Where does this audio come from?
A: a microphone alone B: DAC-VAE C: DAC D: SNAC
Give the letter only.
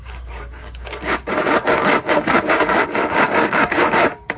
C